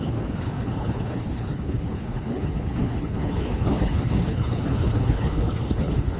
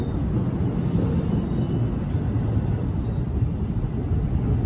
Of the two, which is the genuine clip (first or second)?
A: second